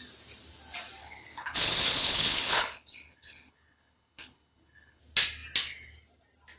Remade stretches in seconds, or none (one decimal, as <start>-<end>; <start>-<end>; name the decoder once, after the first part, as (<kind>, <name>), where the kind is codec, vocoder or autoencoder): 1.0-5.0 (codec, HILCodec)